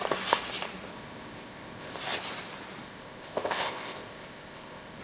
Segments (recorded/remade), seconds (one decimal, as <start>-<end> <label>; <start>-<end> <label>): 0.0-0.9 recorded; 0.9-2.0 remade; 2.0-2.8 recorded; 2.8-5.0 remade